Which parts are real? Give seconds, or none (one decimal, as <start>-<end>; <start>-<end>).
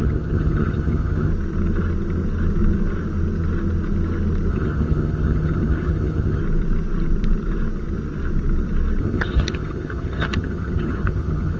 1.3-4.5; 6.4-9.0